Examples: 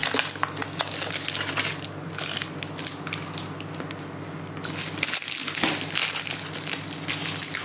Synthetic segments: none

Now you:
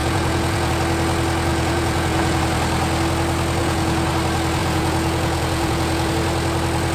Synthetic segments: 0.0-0.7 (vocoder, Vocos); 1.5-2.4; 3.6-4.1; 4.6-6.1